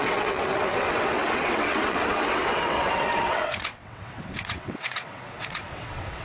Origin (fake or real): fake